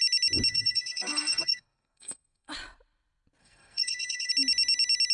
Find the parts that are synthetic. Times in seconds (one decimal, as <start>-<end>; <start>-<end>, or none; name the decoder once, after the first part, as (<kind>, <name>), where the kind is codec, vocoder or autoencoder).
0.5-2.5 (codec, SNAC); 3.4-4.3